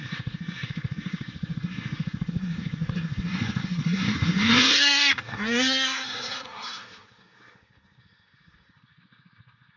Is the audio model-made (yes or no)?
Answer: yes